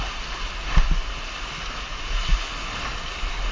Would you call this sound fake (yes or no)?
no